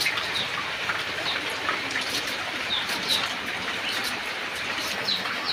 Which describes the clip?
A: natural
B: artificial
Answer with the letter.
B